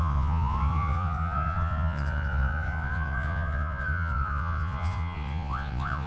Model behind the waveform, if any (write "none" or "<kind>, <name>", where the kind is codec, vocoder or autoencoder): vocoder, Vocos